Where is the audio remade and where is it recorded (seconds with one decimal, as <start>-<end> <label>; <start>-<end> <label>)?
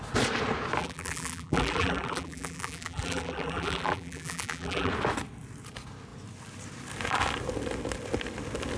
0.0-0.8 recorded; 0.8-4.9 remade; 4.9-8.8 recorded